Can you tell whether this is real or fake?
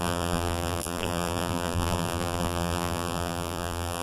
fake